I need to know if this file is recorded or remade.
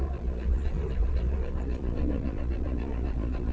remade